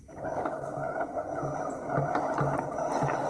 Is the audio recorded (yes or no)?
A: yes